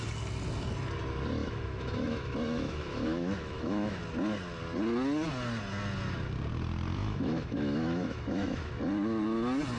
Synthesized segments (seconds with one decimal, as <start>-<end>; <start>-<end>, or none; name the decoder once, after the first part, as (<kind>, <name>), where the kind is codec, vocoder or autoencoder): 1.4-4.0 (autoencoder, DAC-VAE); 7.0-8.7